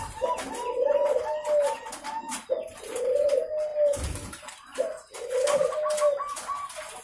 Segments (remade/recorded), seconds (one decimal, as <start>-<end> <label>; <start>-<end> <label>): 0.0-7.0 recorded